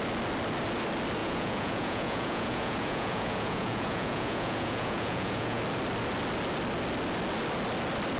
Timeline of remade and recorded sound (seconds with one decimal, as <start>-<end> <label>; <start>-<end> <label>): 0.0-1.2 recorded; 1.2-5.6 remade; 5.6-8.2 recorded